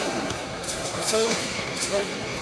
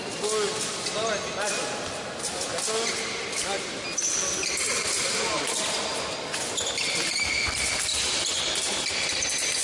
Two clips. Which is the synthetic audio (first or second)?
first